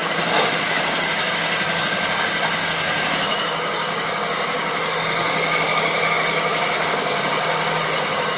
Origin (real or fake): fake